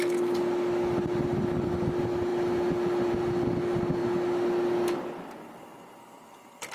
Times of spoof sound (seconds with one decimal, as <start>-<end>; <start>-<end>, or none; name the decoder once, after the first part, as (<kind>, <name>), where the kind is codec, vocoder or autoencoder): none